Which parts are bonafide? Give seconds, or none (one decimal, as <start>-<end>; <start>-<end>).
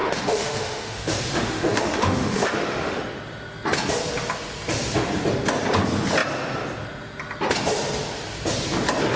3.0-9.2